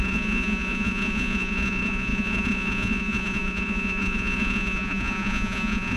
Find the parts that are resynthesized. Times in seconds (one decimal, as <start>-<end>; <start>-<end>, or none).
0.0-6.0